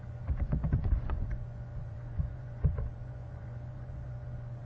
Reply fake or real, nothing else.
fake